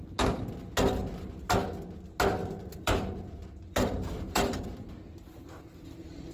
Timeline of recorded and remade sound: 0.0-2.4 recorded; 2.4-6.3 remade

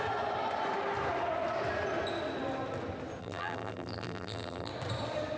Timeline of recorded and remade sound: 0.0-3.2 recorded; 3.2-4.7 remade; 4.7-5.4 recorded